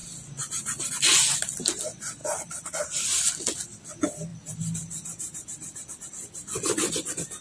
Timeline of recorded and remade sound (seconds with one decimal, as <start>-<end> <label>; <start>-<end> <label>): 0.0-7.4 recorded